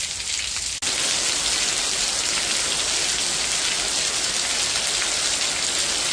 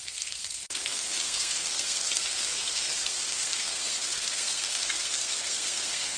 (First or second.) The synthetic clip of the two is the second